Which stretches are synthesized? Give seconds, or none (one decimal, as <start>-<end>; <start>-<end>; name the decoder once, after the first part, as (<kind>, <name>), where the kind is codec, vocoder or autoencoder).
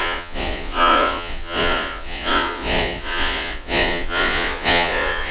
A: 0.0-5.3 (vocoder, Vocos)